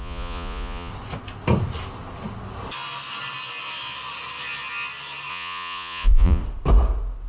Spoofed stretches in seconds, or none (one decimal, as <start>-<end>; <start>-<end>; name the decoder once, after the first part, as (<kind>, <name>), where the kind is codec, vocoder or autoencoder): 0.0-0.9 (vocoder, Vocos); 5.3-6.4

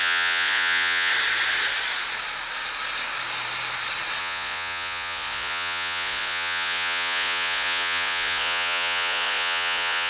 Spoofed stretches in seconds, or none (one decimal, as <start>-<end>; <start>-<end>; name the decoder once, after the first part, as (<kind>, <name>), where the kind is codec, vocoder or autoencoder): 0.0-1.1 (vocoder, Vocos); 4.2-10.1

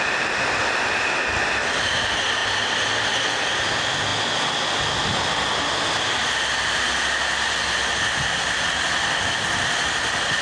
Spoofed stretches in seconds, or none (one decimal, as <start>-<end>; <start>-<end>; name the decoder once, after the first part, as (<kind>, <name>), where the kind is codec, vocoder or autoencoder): none

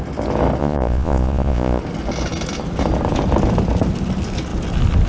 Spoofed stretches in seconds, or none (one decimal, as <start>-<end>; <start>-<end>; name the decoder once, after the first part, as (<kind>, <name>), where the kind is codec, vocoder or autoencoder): 0.6-1.8 (vocoder, Vocos)

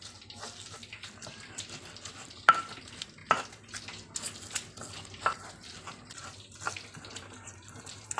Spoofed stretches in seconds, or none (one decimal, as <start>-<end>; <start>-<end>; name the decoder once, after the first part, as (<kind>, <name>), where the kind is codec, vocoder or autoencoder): none